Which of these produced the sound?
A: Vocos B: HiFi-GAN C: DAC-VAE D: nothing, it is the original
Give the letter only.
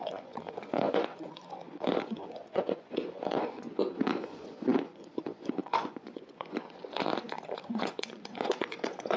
A